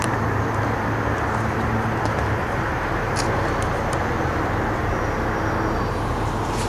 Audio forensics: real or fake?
real